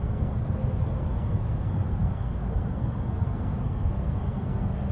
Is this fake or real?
fake